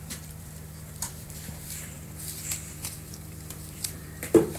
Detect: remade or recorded remade